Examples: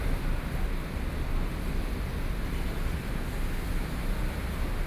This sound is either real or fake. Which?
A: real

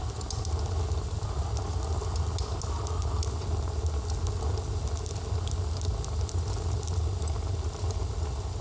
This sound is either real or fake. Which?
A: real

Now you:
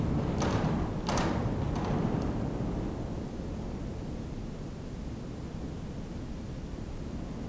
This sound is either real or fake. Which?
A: real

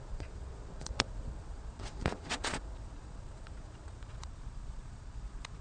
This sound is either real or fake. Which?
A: fake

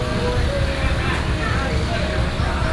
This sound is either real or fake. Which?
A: real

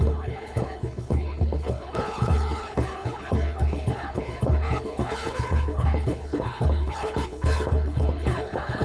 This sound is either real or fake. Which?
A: fake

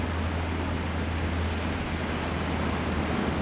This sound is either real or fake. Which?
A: real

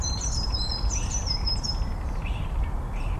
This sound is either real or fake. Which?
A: fake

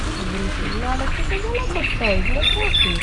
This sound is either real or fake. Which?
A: real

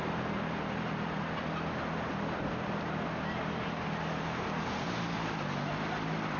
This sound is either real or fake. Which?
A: real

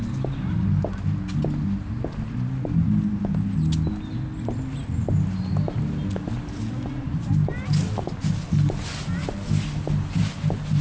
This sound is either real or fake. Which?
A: real